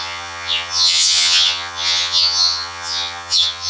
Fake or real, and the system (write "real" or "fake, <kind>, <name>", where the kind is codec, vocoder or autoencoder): fake, vocoder, HiFi-GAN